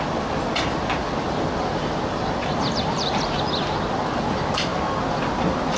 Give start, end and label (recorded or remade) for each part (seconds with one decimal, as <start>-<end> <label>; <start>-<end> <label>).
0.0-2.4 recorded; 2.4-3.5 remade; 3.5-5.8 recorded